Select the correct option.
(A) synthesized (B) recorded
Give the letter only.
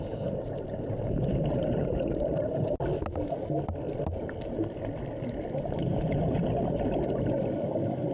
B